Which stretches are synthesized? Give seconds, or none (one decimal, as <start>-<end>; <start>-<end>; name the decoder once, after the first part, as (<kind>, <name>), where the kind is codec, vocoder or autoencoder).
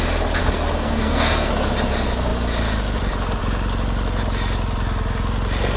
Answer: 0.4-1.5 (codec, SNAC)